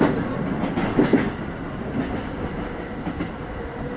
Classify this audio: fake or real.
real